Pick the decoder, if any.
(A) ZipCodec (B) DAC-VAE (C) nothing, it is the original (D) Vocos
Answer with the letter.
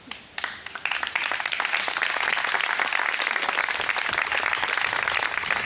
C